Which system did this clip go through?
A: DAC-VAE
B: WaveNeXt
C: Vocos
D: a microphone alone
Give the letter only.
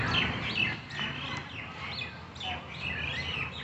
D